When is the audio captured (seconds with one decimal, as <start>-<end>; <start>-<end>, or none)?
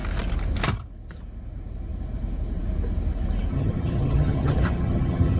0.0-3.5